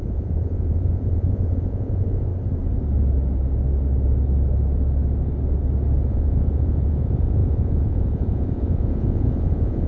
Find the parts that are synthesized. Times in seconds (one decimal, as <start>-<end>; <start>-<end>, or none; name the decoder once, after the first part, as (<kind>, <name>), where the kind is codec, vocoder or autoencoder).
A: 0.0-2.3 (vocoder, Vocos); 6.1-9.9